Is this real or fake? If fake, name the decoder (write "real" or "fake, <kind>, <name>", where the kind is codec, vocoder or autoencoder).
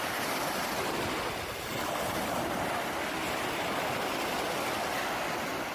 real